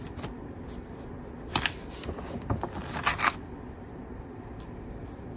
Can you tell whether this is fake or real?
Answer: real